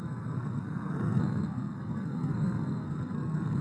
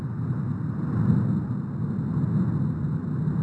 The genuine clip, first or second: second